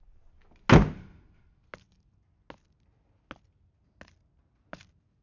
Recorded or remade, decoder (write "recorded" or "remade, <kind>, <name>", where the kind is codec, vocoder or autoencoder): recorded